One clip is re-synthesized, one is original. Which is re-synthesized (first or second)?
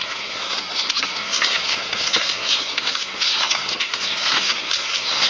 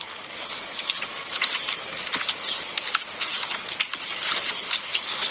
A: first